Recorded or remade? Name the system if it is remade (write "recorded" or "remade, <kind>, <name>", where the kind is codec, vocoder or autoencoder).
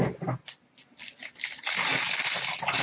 recorded